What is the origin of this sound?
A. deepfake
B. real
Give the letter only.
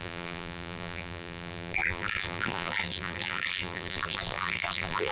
A